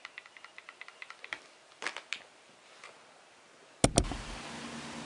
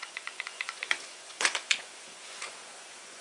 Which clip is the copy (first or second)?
second